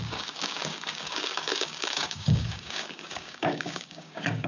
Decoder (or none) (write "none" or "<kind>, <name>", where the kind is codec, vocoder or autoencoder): codec, DAC